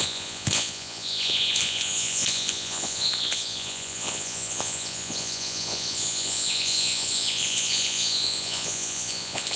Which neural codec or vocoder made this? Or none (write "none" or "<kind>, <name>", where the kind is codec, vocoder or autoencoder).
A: vocoder, Vocos